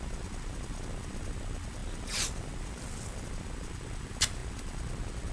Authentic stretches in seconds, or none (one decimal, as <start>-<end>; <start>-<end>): 0.0-5.3